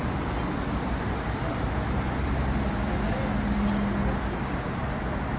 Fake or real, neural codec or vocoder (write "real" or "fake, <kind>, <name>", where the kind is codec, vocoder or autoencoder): real